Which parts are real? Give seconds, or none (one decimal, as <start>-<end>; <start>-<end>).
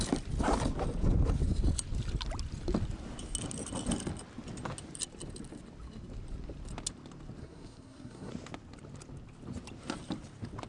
0.0-7.4; 8.3-10.7